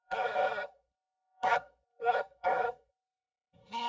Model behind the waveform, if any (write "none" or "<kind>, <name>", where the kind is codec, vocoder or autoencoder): codec, SNAC